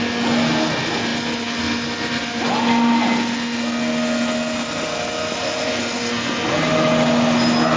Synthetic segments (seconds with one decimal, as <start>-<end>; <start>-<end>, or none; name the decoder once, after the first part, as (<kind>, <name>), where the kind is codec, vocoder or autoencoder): none